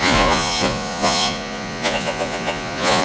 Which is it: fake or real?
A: fake